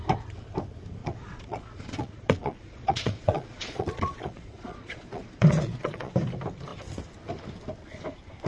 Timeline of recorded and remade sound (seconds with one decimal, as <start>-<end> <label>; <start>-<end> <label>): 0.0-1.0 recorded; 1.0-6.1 remade; 6.1-8.5 recorded